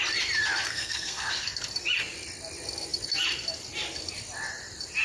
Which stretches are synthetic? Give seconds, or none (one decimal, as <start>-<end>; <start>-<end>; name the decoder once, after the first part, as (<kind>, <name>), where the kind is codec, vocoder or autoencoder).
0.7-1.3 (codec, SNAC)